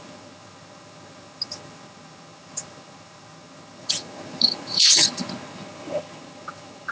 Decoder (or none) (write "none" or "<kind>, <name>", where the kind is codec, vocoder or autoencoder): vocoder, HiFi-GAN